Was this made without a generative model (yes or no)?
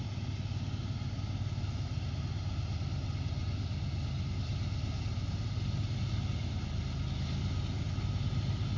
yes